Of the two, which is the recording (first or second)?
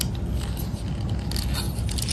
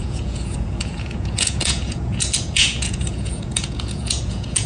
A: first